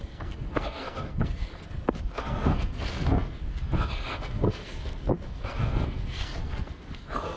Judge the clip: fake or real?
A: fake